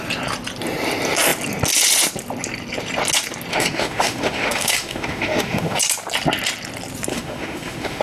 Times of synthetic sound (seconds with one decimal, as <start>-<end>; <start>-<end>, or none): 3.5-5.8; 7.1-8.0